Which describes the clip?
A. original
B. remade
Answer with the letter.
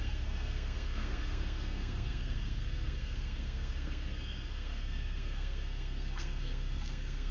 B